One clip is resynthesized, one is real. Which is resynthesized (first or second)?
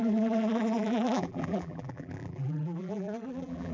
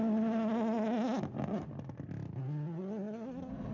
first